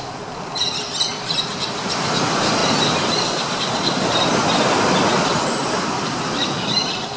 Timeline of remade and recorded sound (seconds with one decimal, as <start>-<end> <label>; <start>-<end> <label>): 0.0-7.2 recorded